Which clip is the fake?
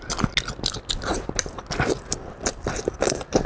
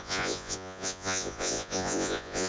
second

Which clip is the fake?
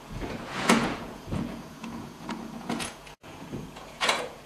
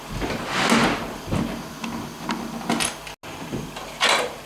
first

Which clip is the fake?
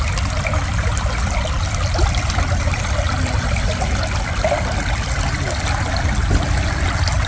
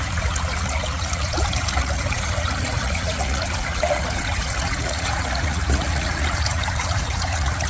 second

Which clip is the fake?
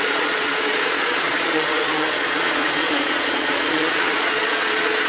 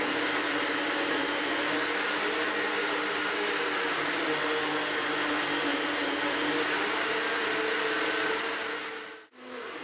first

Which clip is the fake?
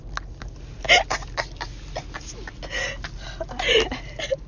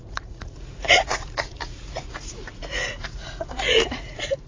second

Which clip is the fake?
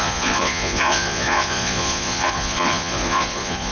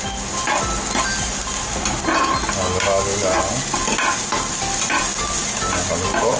first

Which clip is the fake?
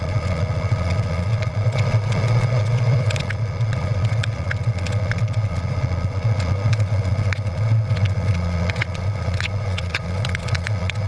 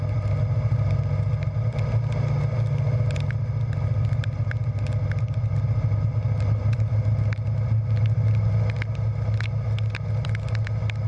first